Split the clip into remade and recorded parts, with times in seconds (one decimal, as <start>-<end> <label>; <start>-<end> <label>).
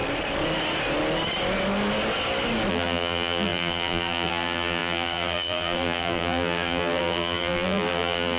0.0-2.7 recorded; 2.7-8.4 remade